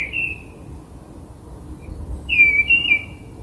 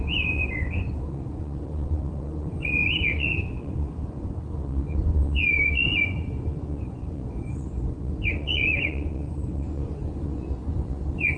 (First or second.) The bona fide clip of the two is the first